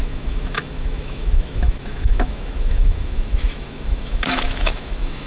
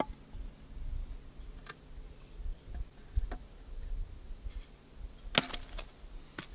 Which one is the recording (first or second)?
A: second